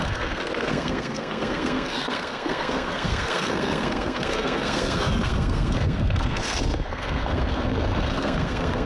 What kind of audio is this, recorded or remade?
remade